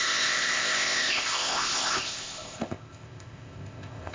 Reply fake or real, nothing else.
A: fake